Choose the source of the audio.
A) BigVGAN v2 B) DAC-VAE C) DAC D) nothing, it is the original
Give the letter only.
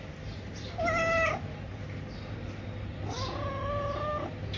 D